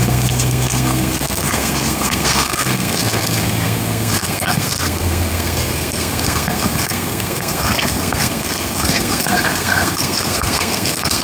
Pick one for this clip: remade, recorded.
remade